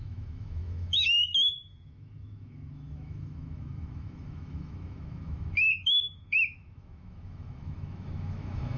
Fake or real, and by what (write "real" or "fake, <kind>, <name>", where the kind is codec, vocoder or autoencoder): fake, autoencoder, DAC-VAE